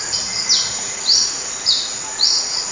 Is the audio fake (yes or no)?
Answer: yes